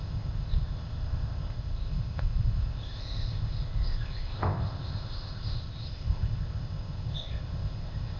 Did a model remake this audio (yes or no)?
yes